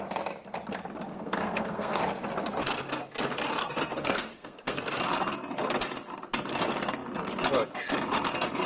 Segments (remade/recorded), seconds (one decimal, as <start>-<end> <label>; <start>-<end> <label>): 0.0-1.1 recorded; 1.1-2.0 remade; 2.0-3.6 recorded; 3.6-4.8 remade; 4.8-8.7 recorded